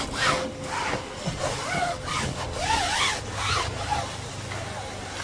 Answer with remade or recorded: recorded